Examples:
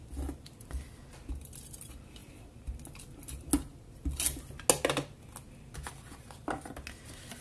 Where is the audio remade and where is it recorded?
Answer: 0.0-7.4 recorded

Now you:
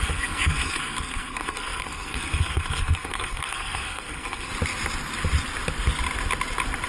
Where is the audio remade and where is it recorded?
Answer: 0.0-4.5 remade; 4.5-6.9 recorded

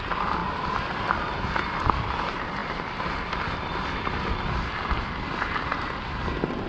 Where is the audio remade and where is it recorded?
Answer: 0.0-0.4 recorded; 0.4-0.9 remade; 0.9-6.7 recorded

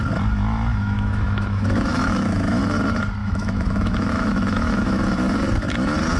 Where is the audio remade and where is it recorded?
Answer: 0.0-0.7 recorded; 0.7-2.6 remade; 2.6-3.2 recorded; 3.2-5.0 remade; 5.0-6.2 recorded

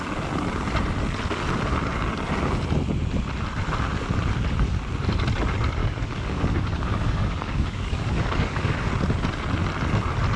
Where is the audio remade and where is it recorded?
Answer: 0.0-5.8 recorded; 5.8-8.9 remade; 8.9-10.4 recorded

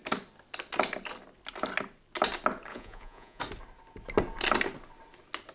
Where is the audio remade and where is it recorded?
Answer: 0.0-2.7 recorded; 2.7-3.4 remade; 3.4-5.5 recorded

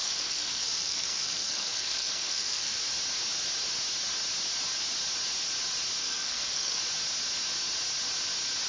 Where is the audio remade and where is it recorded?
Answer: 0.0-2.8 remade; 2.8-6.0 recorded; 6.0-6.8 remade; 6.8-8.7 recorded